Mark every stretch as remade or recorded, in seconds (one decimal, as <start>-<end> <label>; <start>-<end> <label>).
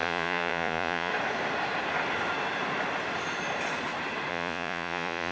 0.0-1.1 remade; 1.1-4.3 recorded; 4.3-5.3 remade